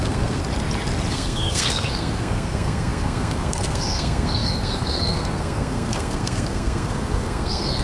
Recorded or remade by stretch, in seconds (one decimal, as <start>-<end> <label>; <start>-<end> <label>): 0.0-0.4 remade; 0.4-1.1 recorded; 1.1-7.8 remade